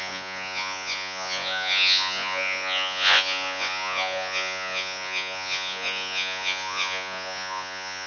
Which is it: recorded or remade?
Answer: remade